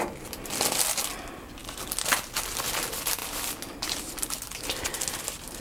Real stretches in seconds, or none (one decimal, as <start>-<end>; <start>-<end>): 0.0-5.6